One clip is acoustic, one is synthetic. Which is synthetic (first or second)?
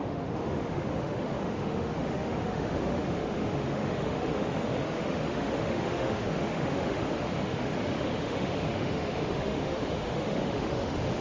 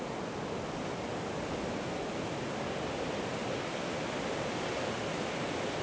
first